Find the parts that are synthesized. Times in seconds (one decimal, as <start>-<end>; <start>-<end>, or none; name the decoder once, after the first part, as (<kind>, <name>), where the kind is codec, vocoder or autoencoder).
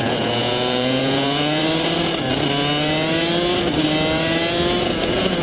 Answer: 0.0-1.6 (vocoder, Vocos); 4.8-5.4